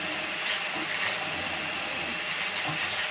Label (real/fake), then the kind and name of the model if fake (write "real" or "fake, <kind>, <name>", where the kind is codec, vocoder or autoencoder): real